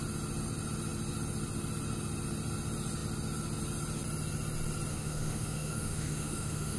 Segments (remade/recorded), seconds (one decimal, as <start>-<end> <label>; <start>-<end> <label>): 0.0-4.9 recorded; 4.9-6.8 remade

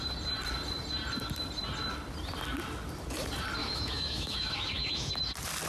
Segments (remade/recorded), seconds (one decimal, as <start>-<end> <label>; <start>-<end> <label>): 0.0-3.6 recorded; 3.6-5.1 remade; 5.1-5.7 recorded

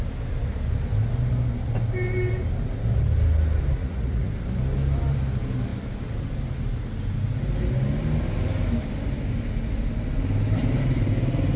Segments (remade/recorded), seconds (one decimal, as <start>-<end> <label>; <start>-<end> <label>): 0.0-3.8 recorded; 3.8-4.3 remade; 4.3-11.6 recorded

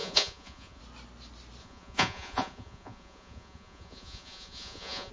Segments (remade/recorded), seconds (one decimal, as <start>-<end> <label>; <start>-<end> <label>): 0.0-0.8 remade; 0.8-1.6 recorded; 1.6-5.1 remade

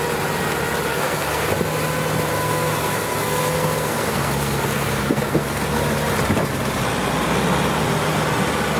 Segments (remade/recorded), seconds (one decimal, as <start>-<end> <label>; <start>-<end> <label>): 0.0-0.9 recorded; 0.9-1.5 remade; 1.5-2.4 recorded; 2.4-5.8 remade; 5.8-8.8 recorded

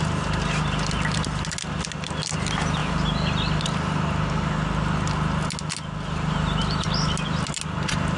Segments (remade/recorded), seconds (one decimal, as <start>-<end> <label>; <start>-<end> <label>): 0.0-8.2 recorded

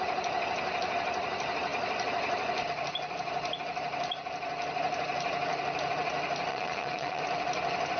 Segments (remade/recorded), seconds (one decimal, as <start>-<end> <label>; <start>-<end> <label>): 0.0-6.5 recorded; 6.5-7.2 remade; 7.2-8.0 recorded

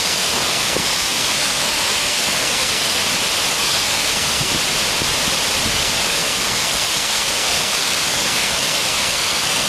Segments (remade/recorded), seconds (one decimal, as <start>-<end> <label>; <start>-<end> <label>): 0.0-3.0 remade; 3.0-3.5 recorded; 3.5-4.5 remade; 4.5-5.7 recorded; 5.7-9.7 remade